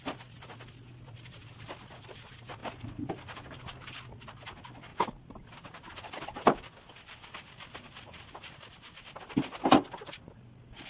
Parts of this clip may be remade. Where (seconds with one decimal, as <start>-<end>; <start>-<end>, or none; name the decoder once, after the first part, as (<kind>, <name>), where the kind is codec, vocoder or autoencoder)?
none